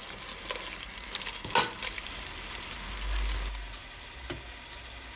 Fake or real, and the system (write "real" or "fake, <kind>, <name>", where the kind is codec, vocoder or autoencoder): real